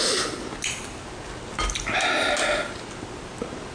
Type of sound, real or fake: real